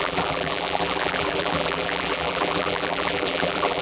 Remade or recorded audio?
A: remade